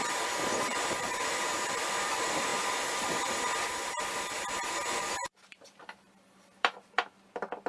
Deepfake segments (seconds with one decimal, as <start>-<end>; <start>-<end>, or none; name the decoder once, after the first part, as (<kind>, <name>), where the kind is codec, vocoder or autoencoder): 0.0-2.5 (vocoder, BigVGAN v2); 5.0-7.7